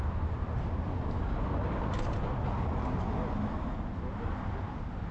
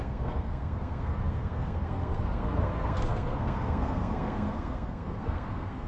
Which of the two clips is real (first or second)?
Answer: first